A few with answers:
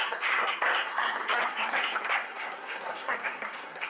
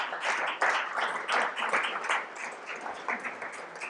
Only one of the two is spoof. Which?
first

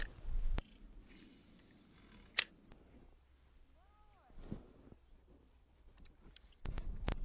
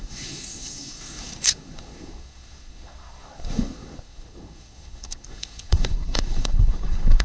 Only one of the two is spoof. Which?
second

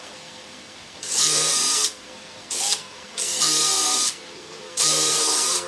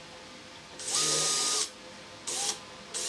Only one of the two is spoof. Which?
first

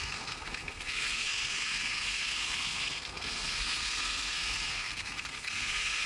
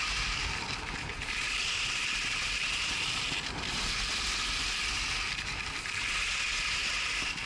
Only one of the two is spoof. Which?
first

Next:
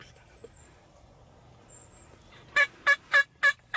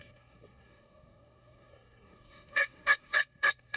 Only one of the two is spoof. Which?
second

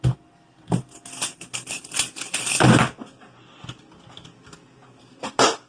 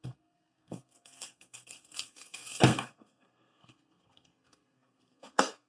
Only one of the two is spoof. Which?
second